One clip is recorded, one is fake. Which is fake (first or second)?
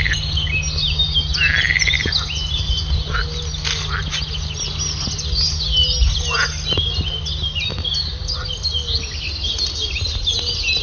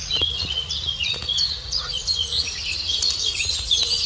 second